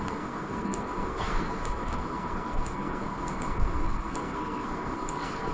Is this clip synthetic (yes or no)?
yes